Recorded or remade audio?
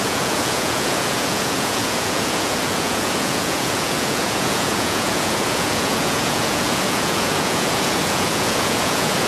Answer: remade